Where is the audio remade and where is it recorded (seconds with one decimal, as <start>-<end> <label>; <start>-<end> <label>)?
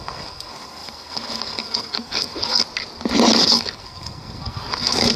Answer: 0.0-2.6 remade; 2.6-3.4 recorded; 3.4-5.2 remade